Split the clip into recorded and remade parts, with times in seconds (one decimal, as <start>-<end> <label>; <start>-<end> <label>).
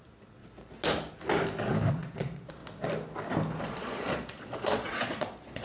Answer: 0.0-0.4 remade; 0.4-1.9 recorded; 1.9-2.6 remade; 2.6-3.6 recorded; 3.6-5.6 remade